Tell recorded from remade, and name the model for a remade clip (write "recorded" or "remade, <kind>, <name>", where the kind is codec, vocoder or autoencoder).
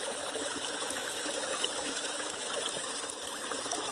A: remade, autoencoder, DAC-VAE